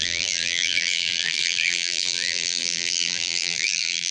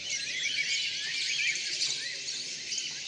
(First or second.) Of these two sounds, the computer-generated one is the first